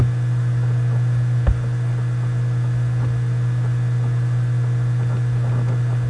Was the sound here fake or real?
real